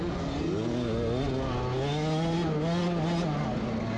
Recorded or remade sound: recorded